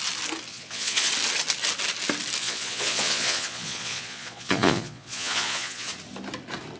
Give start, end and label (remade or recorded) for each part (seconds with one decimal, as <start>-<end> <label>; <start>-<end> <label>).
0.0-0.5 recorded; 0.5-1.1 remade; 1.1-2.4 recorded; 2.4-5.9 remade; 5.9-6.8 recorded